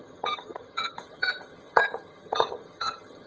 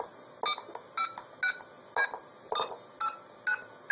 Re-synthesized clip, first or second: first